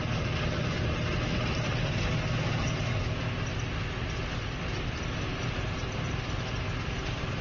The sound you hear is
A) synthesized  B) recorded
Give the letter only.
B